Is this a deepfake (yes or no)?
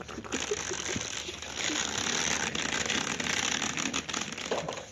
no